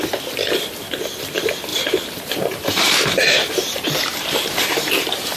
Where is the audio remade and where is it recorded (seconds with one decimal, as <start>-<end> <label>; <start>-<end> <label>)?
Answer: 0.0-1.7 recorded; 1.7-4.9 remade; 4.9-5.4 recorded